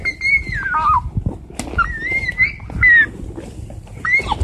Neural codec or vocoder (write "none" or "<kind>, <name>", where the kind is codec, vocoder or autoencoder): none